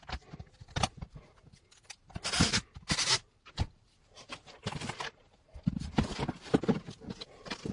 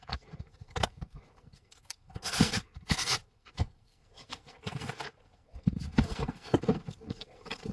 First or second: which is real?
first